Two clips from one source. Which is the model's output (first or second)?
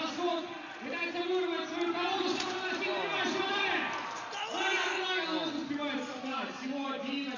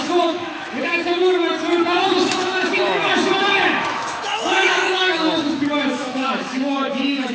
second